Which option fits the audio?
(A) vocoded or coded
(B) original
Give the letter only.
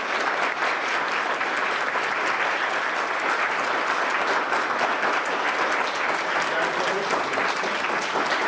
B